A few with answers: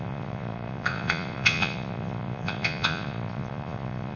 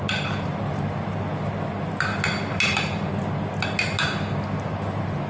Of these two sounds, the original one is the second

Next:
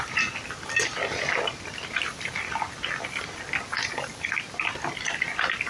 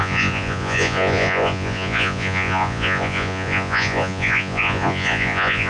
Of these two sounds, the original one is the first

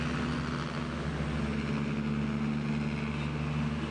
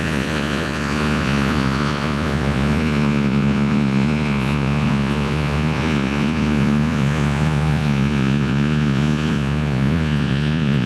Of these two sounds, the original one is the first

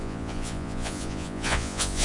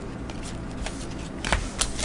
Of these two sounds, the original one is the second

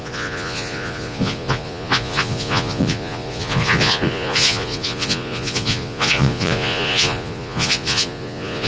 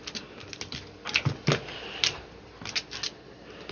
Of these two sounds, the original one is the second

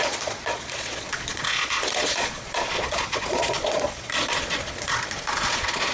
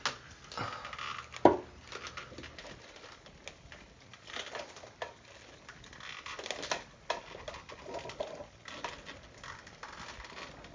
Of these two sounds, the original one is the second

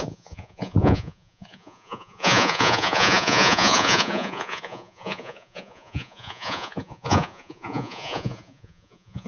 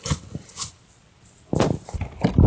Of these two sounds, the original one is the second